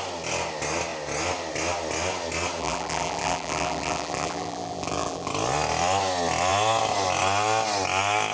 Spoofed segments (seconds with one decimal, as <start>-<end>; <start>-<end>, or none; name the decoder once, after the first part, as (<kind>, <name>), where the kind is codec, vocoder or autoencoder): 2.6-5.3 (vocoder, BigVGAN v2)